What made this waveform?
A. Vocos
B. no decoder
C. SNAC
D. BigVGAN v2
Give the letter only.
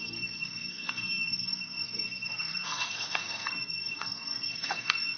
C